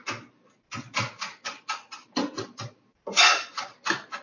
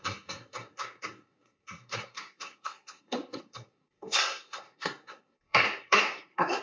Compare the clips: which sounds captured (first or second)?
first